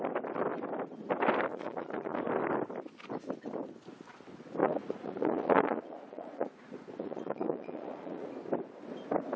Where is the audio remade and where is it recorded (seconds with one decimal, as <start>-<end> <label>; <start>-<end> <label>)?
0.0-1.5 recorded; 1.5-2.2 remade; 2.2-4.6 recorded; 4.6-8.3 remade; 8.3-9.4 recorded